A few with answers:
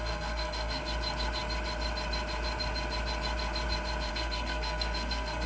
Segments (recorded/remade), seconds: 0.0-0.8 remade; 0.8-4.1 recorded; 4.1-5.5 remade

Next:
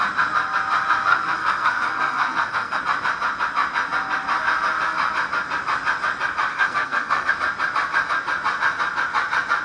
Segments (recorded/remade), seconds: 0.0-1.1 recorded; 1.1-2.8 remade; 2.8-6.5 recorded; 6.5-7.3 remade; 7.3-9.6 recorded